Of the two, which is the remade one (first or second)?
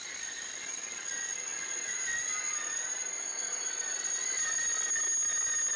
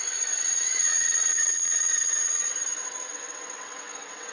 second